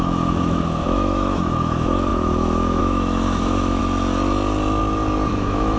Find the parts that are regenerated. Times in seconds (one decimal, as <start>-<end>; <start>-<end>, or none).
0.0-3.8; 5.3-5.8